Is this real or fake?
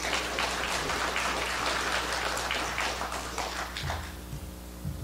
real